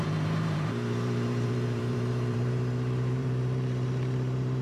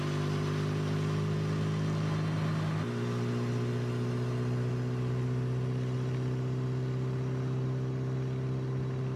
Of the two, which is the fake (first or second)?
first